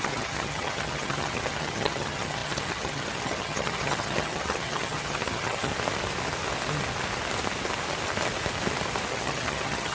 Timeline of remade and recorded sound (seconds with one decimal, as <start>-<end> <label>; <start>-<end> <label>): 0.0-5.7 remade; 5.7-9.1 recorded; 9.1-9.9 remade

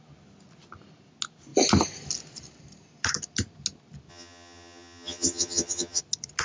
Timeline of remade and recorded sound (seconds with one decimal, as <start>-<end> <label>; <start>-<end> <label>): 0.0-4.1 recorded; 4.1-6.0 remade; 6.0-6.4 recorded

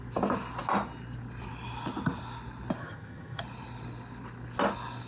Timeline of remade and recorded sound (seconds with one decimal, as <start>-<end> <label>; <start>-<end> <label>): 0.0-2.8 recorded; 2.8-3.4 remade; 3.4-5.1 recorded

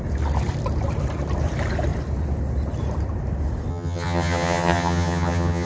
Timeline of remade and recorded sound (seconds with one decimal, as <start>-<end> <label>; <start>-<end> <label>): 0.0-3.7 recorded; 3.7-5.7 remade

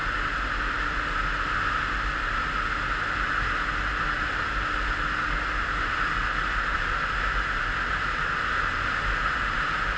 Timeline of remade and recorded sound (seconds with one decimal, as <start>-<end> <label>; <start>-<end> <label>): 0.0-10.0 recorded

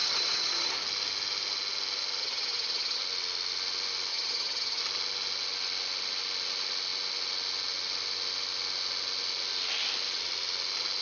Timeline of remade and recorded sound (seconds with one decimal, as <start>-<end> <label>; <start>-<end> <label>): 0.0-0.7 remade; 0.7-2.2 recorded; 2.2-3.0 remade; 3.0-4.1 recorded; 4.1-4.8 remade; 4.8-11.0 recorded